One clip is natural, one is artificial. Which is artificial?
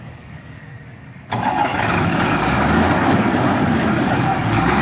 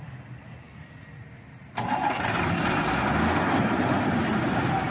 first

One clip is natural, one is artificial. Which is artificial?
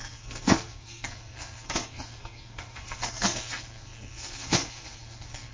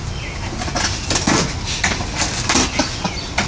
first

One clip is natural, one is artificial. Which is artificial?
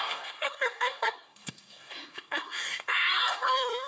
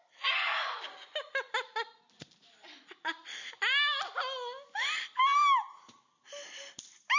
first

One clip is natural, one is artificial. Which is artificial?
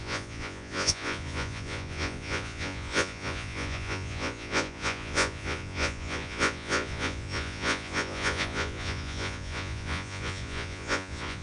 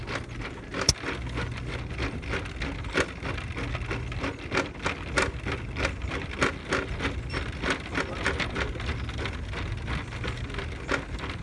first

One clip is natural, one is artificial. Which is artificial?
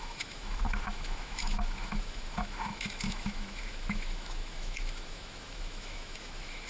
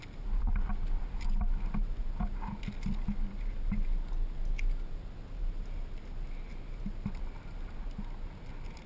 first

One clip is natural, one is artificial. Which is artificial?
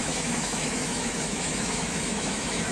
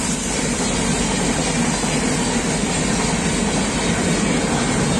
first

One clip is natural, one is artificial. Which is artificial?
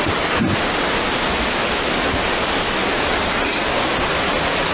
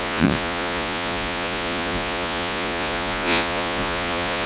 second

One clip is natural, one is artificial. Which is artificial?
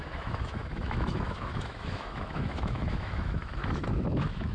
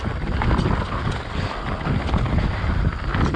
first